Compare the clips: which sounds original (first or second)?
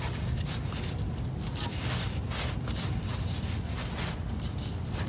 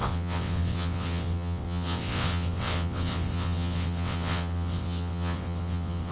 first